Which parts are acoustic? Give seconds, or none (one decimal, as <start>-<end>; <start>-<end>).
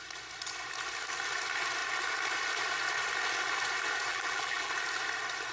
0.0-4.1; 4.7-5.5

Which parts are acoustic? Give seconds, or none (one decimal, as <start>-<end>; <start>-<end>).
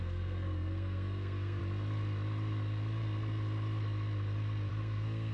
1.6-4.7